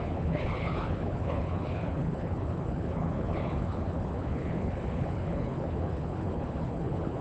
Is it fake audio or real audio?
fake